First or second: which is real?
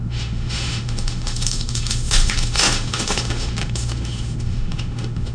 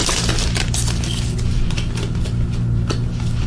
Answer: second